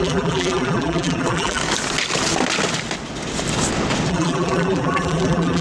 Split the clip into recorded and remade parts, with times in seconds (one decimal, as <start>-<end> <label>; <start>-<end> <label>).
0.0-1.6 remade; 1.6-4.1 recorded; 4.1-5.6 remade